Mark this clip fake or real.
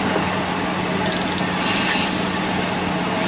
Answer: real